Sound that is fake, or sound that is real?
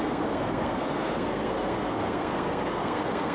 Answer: fake